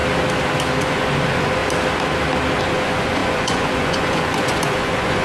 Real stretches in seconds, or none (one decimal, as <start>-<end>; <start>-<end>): 0.0-0.8; 1.6-2.6